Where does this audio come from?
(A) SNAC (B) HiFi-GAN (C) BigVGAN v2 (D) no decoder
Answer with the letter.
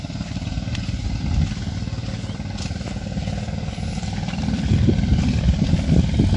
D